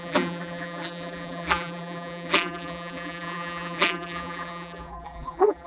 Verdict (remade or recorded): remade